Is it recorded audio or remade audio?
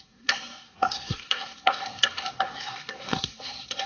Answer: remade